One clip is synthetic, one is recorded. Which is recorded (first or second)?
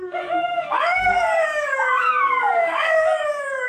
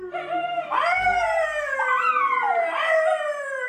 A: second